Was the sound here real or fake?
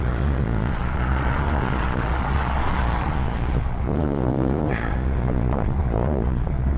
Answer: fake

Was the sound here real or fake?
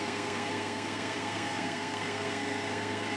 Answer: fake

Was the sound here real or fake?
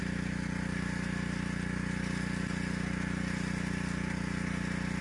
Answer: real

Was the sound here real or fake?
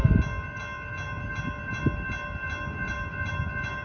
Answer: real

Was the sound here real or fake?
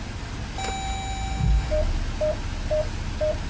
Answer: real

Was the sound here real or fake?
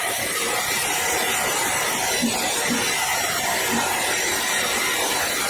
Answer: real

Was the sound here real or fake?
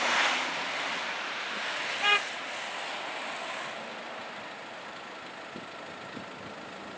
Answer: real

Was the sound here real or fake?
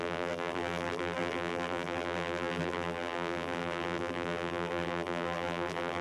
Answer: fake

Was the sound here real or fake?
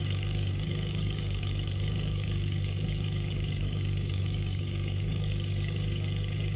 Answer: fake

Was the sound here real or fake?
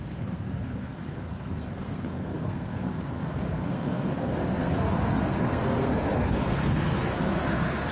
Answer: fake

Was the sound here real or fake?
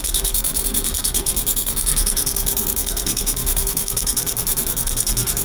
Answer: fake